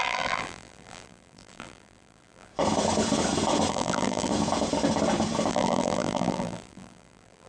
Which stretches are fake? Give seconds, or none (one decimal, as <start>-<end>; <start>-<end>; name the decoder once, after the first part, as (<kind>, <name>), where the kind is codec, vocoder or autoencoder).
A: 0.0-2.5 (vocoder, BigVGAN v2); 3.7-4.3; 5.5-7.5